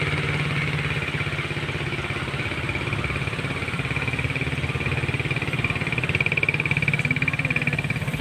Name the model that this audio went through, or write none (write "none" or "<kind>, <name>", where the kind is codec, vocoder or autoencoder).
none